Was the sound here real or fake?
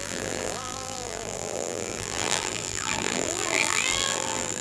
fake